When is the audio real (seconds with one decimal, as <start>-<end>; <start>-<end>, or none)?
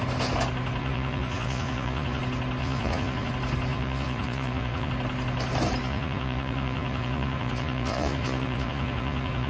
0.0-0.8; 2.2-2.6; 3.3-3.7; 4.9-5.8